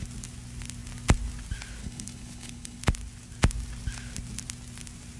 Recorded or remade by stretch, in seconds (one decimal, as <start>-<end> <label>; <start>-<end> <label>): 0.0-1.8 recorded; 1.8-2.8 remade; 2.8-5.2 recorded